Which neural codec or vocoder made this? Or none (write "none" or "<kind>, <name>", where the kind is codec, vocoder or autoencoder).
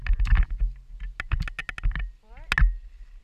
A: none